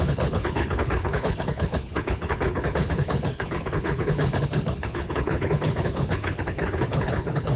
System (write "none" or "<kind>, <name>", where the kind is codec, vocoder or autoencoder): codec, HILCodec